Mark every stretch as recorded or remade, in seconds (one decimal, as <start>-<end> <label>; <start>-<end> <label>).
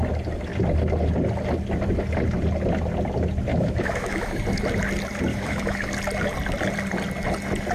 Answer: 0.0-3.5 recorded; 3.5-4.3 remade; 4.3-5.3 recorded; 5.3-5.9 remade; 5.9-7.7 recorded